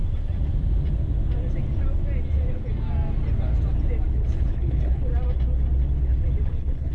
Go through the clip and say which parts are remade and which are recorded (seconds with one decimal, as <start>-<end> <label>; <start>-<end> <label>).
0.0-4.1 recorded; 4.1-5.1 remade; 5.1-6.4 recorded; 6.4-6.9 remade